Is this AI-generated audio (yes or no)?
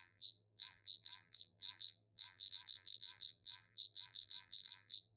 yes